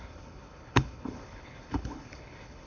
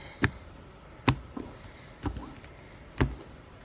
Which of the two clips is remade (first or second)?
first